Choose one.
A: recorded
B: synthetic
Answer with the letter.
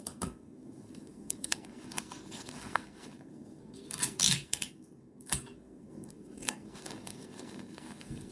B